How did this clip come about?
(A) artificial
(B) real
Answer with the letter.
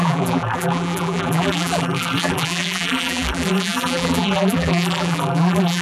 A